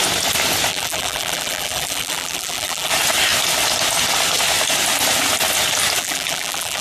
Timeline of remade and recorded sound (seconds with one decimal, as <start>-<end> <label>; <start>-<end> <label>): 0.0-0.7 recorded; 0.7-2.9 remade; 2.9-6.0 recorded; 6.0-6.8 remade